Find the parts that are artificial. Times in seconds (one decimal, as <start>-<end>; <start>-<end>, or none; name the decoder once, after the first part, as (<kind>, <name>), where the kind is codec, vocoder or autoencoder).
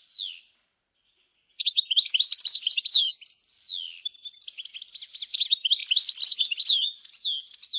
none